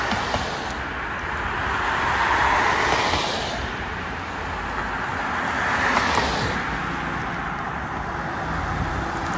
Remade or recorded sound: recorded